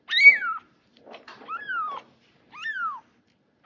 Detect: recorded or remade recorded